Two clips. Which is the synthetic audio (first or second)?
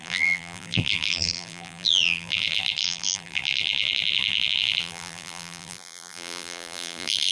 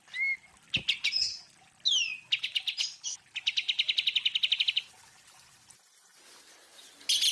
first